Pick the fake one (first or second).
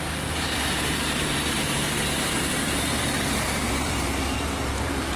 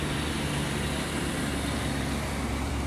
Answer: first